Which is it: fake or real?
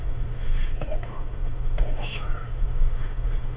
fake